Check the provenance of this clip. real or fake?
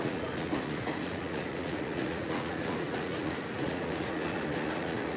fake